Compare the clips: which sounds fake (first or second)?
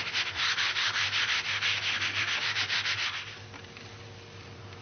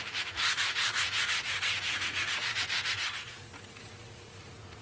second